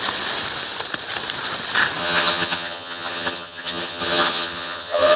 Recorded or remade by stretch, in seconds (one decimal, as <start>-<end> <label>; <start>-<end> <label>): 0.0-2.0 recorded; 2.0-5.2 remade